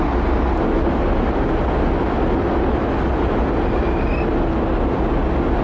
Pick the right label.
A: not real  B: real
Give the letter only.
B